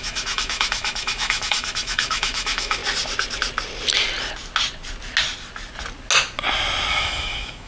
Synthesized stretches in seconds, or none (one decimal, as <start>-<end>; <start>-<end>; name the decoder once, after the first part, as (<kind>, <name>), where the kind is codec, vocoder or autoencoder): 0.0-2.8 (autoencoder, DAC-VAE); 6.9-7.7